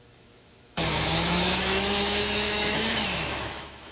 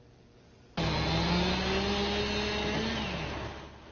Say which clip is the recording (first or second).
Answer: second